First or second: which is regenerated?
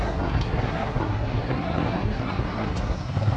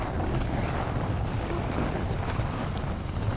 first